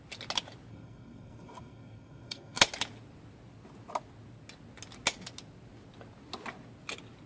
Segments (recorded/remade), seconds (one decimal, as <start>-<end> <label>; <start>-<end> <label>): 0.0-0.7 recorded; 0.7-2.6 remade; 2.6-7.3 recorded